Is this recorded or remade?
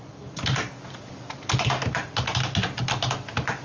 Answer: recorded